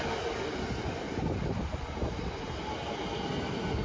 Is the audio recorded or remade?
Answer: recorded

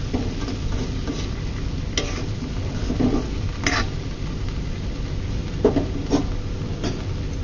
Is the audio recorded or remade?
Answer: recorded